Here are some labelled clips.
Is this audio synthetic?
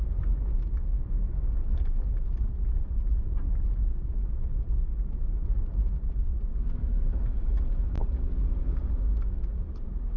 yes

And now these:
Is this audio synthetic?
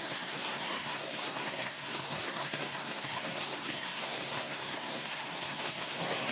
yes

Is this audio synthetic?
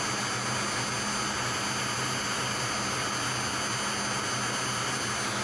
no